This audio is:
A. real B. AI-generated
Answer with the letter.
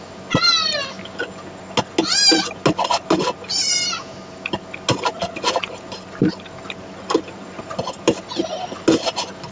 A